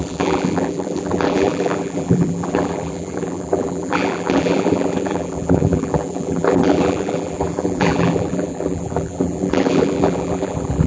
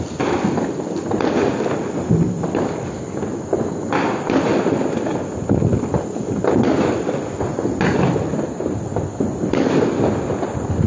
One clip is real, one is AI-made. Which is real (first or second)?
second